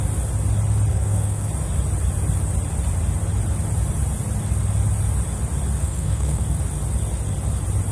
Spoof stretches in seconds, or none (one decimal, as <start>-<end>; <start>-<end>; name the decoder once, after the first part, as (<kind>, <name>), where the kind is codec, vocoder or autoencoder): 0.9-1.5 (codec, SNAC); 5.8-6.4